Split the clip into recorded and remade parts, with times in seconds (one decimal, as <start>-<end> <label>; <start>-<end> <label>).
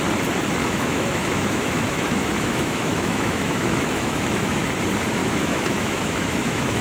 0.0-0.6 recorded; 0.6-4.7 remade; 4.7-5.2 recorded; 5.2-6.8 remade